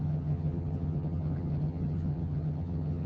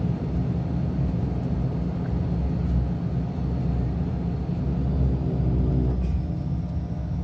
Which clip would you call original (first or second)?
second